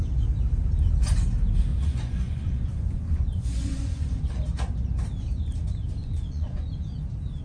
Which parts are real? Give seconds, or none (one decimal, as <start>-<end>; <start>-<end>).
0.0-1.7; 4.2-6.0; 6.7-7.4